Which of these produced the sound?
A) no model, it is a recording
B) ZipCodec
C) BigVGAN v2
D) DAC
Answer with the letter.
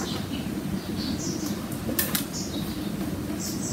A